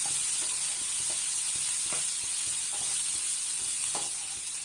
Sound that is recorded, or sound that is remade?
recorded